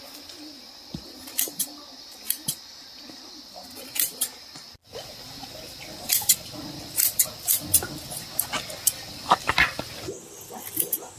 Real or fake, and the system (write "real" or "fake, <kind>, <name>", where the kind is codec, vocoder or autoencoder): real